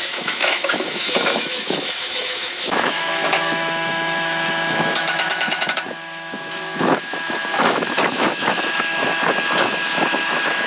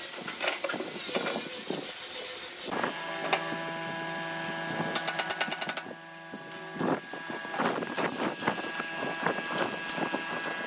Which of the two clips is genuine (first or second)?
second